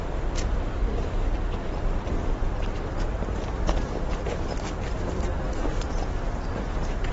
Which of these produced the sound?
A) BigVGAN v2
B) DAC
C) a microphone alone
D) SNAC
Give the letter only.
A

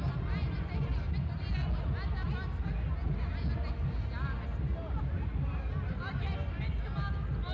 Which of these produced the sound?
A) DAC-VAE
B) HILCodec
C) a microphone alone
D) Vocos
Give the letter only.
C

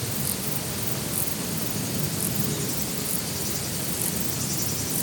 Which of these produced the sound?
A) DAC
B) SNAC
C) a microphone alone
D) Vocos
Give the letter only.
C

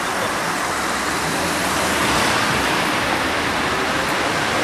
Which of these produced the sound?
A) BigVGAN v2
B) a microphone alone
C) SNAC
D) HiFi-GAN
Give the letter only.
B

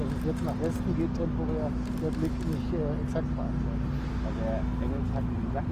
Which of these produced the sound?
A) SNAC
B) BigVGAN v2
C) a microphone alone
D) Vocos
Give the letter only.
C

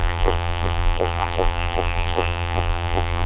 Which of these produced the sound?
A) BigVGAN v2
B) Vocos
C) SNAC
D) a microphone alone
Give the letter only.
A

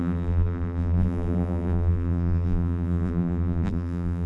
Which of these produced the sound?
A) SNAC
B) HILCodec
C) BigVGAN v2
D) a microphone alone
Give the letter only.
C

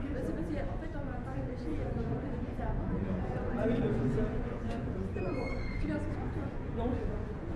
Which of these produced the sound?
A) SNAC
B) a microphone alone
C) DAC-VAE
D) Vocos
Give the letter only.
D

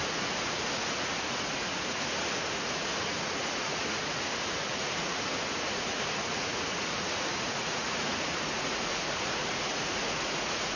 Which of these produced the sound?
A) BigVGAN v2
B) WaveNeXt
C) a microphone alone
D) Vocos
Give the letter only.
D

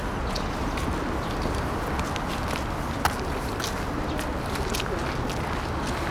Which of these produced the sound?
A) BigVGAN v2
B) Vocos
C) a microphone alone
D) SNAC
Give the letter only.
C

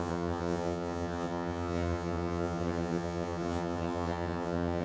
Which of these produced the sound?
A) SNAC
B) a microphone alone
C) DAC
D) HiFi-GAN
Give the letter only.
D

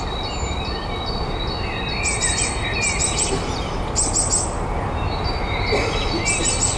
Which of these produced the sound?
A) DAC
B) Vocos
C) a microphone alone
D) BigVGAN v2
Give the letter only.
C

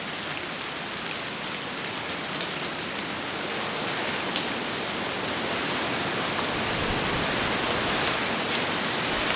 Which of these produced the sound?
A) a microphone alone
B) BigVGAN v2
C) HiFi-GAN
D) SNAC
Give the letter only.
A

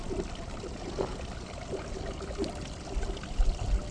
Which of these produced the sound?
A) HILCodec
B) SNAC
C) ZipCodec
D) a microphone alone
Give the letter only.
D